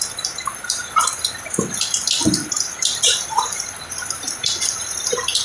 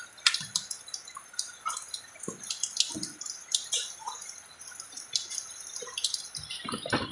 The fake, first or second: first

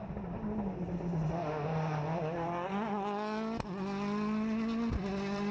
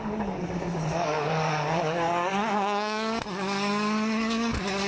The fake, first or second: second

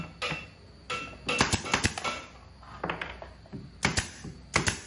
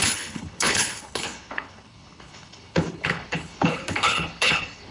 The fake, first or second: second